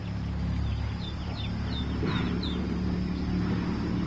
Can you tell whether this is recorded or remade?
recorded